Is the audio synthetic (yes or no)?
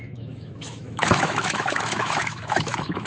yes